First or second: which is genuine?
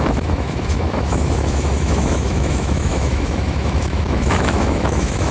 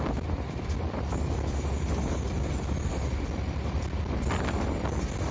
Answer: second